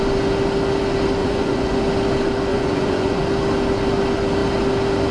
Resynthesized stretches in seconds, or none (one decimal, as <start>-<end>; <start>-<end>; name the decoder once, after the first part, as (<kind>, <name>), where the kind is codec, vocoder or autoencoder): 1.2-1.8 (vocoder, Vocos); 2.5-3.2